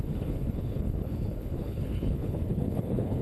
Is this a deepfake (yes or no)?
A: yes